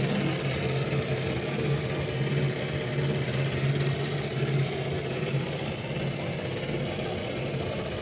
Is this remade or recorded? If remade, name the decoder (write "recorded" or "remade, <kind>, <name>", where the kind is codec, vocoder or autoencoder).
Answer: recorded